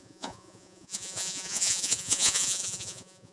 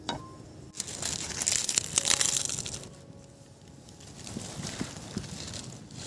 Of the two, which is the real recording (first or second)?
second